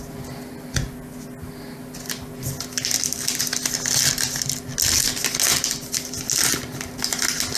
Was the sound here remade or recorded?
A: recorded